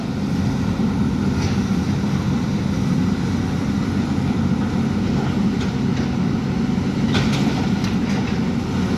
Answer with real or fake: real